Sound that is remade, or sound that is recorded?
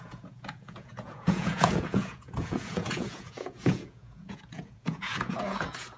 remade